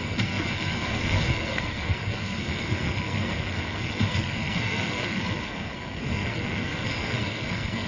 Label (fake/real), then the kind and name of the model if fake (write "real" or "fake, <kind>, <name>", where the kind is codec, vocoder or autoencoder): fake, codec, SNAC